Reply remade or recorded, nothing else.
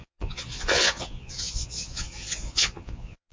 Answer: remade